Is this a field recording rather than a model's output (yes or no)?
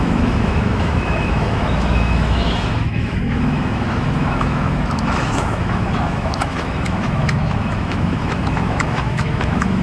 no